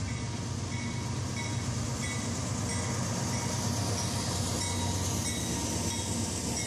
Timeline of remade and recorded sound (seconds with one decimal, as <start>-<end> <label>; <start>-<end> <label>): 0.0-6.7 recorded